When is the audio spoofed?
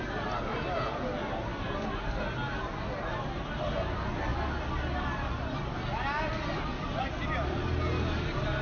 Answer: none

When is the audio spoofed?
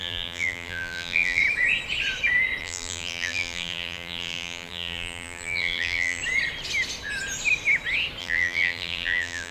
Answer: 0.0-1.4 (vocoder, BigVGAN v2); 2.6-6.2; 8.2-9.5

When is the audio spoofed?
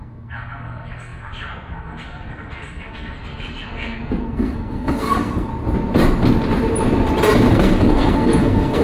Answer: 0.0-5.5 (codec, SNAC); 7.5-8.8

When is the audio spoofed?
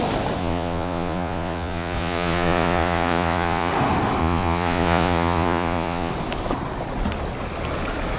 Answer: 0.4-3.7 (vocoder, Vocos); 4.2-6.1